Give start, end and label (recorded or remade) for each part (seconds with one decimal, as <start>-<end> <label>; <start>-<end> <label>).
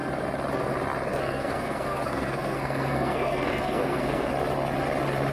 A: 0.0-1.1 recorded; 1.1-4.3 remade; 4.3-5.3 recorded